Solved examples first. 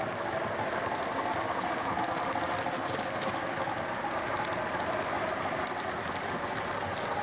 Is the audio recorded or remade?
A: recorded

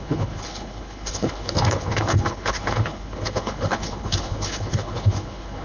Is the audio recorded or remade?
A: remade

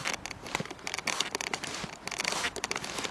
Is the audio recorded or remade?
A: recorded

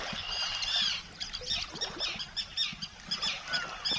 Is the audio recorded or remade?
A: recorded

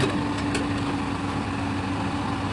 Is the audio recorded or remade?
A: recorded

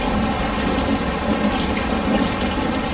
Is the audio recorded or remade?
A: recorded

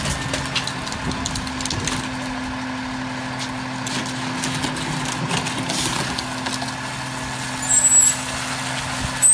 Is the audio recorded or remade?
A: recorded